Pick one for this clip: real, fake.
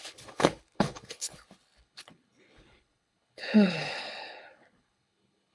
fake